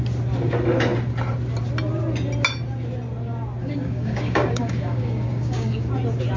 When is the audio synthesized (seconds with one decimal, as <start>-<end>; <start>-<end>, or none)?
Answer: 3.6-5.9